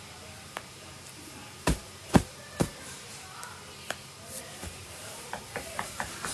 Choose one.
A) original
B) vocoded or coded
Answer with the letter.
B